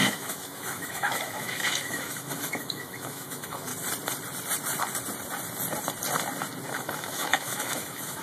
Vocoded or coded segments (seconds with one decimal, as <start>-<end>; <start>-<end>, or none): 0.0-3.7; 6.7-8.2